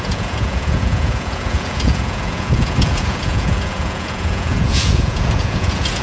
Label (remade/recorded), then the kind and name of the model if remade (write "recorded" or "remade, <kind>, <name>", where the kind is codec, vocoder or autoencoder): remade, vocoder, Vocos